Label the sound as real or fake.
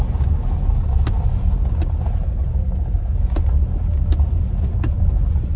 real